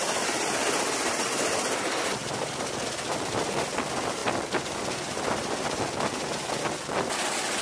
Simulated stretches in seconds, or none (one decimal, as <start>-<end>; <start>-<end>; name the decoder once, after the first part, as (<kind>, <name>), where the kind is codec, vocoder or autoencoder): none